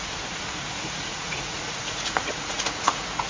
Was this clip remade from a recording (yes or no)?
yes